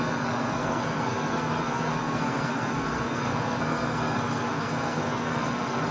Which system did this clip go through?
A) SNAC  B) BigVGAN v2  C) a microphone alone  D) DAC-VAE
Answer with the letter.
A